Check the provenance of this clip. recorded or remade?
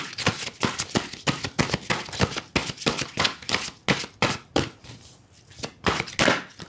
recorded